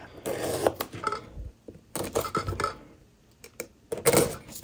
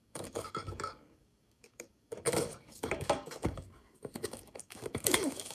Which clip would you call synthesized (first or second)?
second